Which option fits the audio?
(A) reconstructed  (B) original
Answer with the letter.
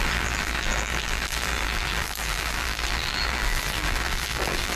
A